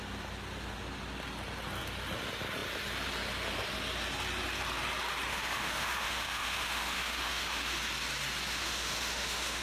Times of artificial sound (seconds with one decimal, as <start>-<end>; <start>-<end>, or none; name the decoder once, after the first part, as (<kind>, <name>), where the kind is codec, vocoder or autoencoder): 5.3-7.8 (autoencoder, DAC-VAE); 8.5-9.6